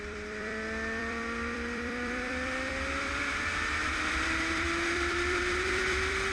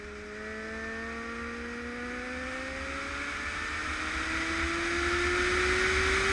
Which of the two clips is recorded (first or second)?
second